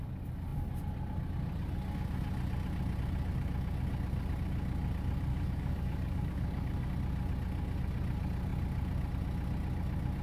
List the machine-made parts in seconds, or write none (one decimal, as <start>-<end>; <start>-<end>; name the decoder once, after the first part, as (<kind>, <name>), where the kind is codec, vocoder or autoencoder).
5.3-6.9 (codec, DAC)